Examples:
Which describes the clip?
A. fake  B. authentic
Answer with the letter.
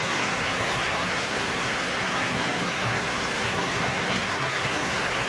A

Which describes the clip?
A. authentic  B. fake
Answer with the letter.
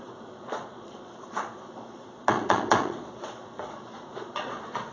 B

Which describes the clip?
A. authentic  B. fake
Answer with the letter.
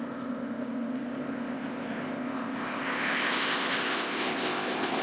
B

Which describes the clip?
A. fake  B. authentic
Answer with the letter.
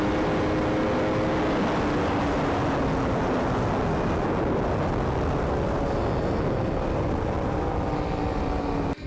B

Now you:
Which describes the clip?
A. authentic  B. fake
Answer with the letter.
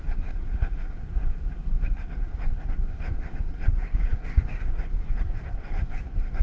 B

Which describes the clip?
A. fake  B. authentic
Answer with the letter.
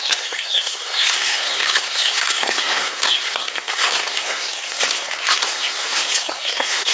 A